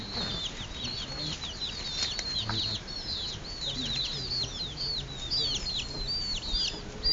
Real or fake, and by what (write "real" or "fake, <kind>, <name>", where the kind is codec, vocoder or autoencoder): real